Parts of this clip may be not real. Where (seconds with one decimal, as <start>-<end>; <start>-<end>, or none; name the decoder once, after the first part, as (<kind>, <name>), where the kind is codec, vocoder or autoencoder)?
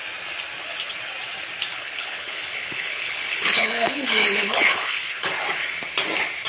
1.7-5.3 (codec, HILCodec)